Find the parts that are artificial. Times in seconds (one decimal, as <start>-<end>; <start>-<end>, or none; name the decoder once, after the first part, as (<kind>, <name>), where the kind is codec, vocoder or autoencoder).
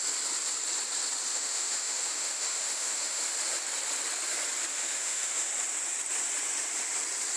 1.3-3.2 (autoencoder, DAC-VAE); 4.7-5.5